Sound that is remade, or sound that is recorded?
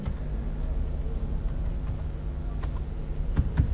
recorded